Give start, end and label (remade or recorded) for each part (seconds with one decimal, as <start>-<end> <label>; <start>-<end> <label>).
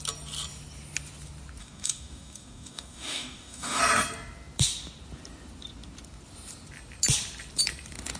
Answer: 0.0-1.6 recorded; 1.6-3.8 remade; 3.8-8.2 recorded